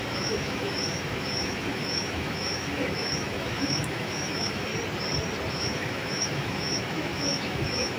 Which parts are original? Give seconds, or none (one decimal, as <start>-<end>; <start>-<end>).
4.7-5.5